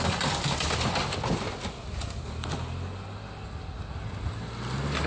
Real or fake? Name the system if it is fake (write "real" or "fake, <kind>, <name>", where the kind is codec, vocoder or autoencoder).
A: real